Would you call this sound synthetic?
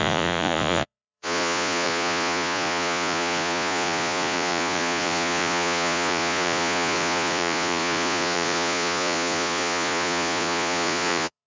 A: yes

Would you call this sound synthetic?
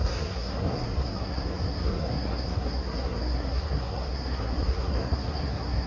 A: yes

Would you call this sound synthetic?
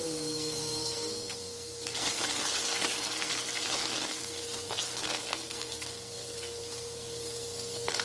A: yes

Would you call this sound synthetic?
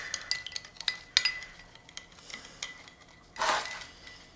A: no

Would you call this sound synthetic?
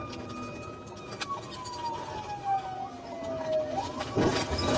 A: no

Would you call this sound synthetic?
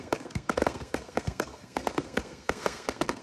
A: yes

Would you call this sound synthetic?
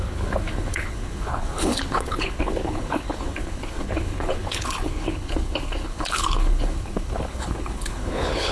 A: yes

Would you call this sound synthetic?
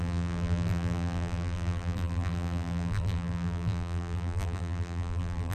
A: yes